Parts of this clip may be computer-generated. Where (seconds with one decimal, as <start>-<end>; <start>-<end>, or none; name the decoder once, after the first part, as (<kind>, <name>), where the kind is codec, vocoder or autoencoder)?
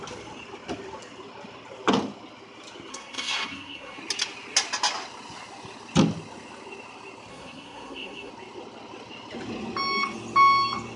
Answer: 2.9-4.0 (codec, SNAC); 7.3-8.3